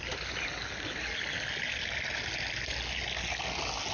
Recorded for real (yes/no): yes